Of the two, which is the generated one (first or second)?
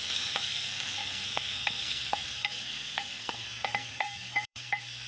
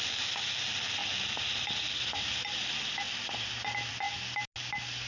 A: first